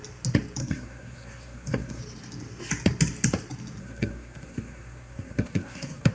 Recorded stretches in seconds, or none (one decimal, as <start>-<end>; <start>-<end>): 0.0-0.6; 2.0-3.8